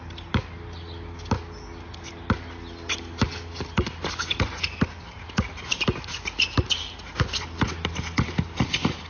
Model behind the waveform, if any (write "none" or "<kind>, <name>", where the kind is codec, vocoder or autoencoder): none